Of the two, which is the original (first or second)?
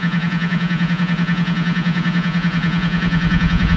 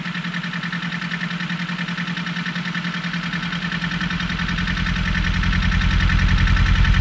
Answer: second